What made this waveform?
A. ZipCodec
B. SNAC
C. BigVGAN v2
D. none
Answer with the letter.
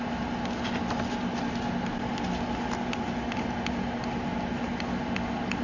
D